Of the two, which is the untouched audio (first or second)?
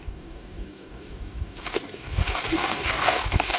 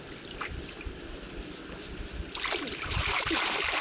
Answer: second